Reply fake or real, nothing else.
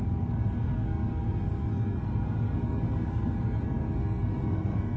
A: fake